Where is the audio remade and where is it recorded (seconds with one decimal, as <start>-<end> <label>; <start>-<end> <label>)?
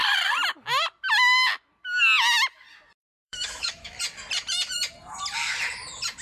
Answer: 0.0-3.0 recorded; 3.0-4.0 remade; 4.0-6.2 recorded